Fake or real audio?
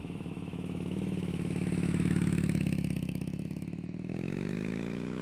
fake